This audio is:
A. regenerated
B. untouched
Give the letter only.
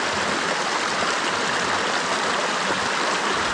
B